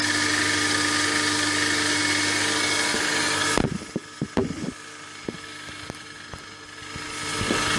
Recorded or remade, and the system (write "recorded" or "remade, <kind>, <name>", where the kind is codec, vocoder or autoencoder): recorded